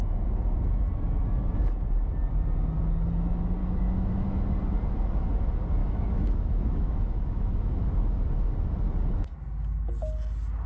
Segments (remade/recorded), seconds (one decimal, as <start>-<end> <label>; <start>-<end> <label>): 0.0-3.6 recorded; 3.6-4.4 remade; 4.4-5.8 recorded; 5.8-8.3 remade; 8.3-10.7 recorded